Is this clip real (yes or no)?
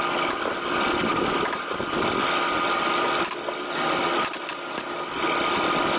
yes